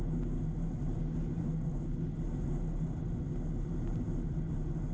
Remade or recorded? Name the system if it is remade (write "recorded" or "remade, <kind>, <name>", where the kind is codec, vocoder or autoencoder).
recorded